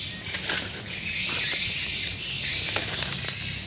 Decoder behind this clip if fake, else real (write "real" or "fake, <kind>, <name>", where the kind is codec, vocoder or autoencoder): real